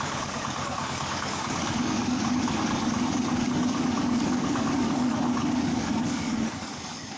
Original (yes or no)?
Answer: no